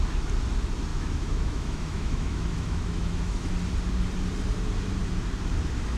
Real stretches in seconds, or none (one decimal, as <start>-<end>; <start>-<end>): 0.0-0.9; 3.5-6.0